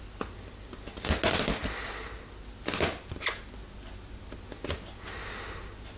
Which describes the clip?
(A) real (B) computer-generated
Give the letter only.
A